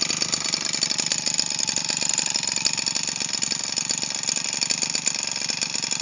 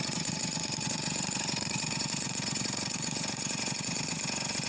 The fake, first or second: second